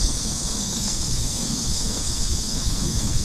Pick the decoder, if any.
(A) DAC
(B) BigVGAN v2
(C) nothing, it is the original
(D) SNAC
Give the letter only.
D